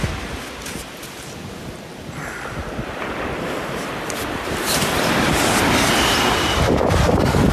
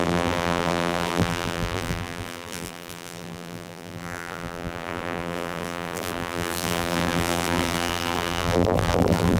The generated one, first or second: second